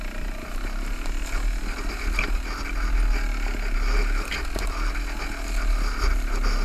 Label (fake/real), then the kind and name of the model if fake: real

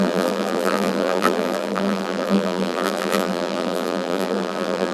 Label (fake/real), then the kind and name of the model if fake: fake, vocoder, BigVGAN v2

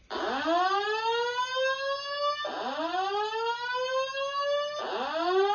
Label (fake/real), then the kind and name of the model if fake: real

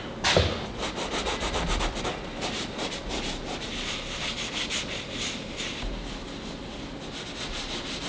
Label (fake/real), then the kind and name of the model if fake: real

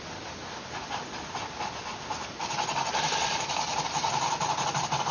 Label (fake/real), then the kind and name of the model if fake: real